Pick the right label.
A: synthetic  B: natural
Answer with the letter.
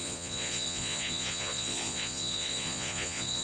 A